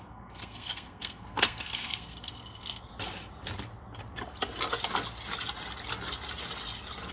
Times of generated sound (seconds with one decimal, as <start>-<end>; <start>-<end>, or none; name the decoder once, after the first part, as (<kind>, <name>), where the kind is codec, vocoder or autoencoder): 0.0-2.9 (codec, SNAC)